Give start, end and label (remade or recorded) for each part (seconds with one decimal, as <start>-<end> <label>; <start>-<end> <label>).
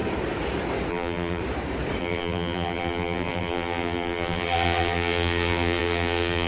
0.0-0.9 recorded; 0.9-1.4 remade; 1.4-2.0 recorded; 2.0-6.5 remade